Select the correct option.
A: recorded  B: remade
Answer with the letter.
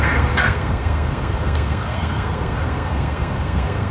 B